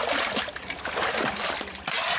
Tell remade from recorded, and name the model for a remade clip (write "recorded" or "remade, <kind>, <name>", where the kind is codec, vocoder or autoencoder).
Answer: recorded